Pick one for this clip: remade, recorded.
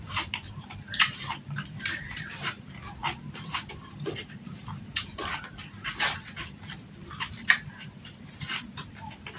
remade